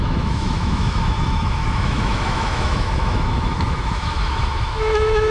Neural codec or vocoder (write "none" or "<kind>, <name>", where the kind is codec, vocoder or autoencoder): autoencoder, DAC-VAE